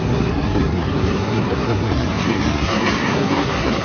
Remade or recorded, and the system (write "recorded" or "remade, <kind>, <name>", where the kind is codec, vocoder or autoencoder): remade, codec, SNAC